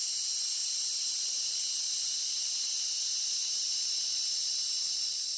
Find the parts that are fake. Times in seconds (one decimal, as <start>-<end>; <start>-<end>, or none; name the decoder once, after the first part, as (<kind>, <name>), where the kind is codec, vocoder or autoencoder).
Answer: none